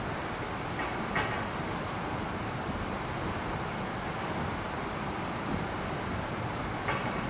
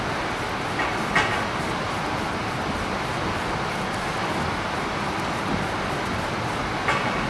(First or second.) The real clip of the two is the second